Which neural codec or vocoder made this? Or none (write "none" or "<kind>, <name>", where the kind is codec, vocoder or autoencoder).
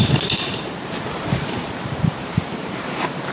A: vocoder, BigVGAN v2